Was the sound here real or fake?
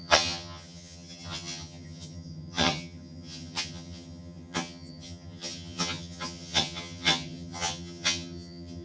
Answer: fake